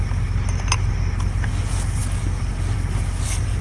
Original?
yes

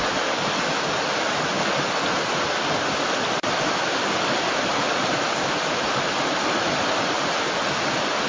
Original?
yes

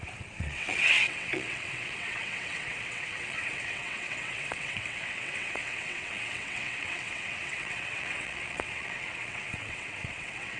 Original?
no